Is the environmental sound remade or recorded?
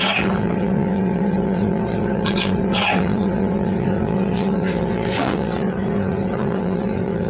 remade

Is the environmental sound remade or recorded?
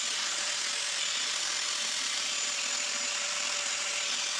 remade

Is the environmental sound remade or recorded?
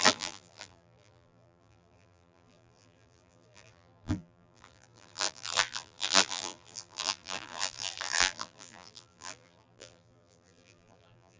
remade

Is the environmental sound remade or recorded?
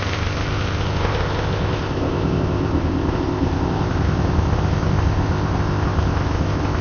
remade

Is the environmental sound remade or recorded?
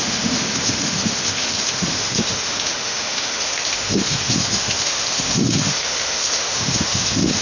remade